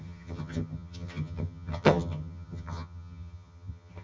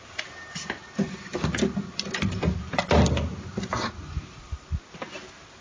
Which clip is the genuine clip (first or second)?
second